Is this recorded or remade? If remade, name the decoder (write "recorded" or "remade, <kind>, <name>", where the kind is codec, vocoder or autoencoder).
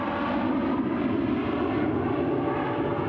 recorded